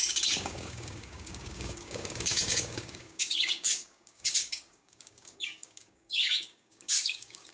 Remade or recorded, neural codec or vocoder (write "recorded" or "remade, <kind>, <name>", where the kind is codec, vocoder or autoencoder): remade, codec, DAC